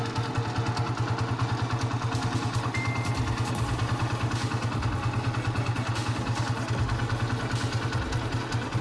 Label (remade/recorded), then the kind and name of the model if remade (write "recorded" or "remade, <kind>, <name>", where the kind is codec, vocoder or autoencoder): recorded